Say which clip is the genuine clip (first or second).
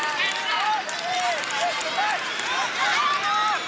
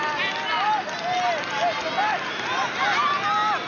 second